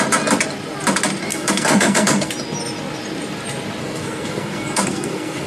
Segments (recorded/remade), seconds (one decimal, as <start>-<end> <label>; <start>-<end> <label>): 0.0-1.3 recorded; 1.3-2.3 remade; 2.3-3.8 recorded; 3.8-5.5 remade

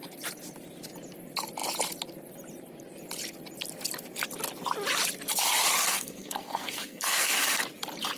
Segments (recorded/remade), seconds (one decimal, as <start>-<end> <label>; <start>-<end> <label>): 0.0-5.9 recorded; 5.9-7.6 remade; 7.6-8.2 recorded

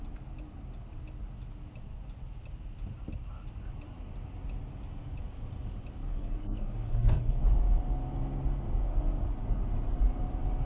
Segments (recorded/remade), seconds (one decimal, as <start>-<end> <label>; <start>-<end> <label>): 0.0-6.0 recorded; 6.0-7.4 remade; 7.4-10.7 recorded